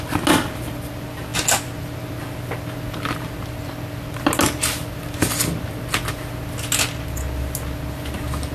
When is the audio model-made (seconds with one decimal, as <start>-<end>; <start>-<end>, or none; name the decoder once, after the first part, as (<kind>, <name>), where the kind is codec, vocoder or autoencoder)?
none